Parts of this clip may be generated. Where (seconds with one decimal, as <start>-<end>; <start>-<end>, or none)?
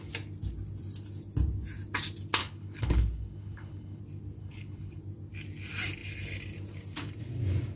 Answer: 2.4-4.0; 4.4-5.0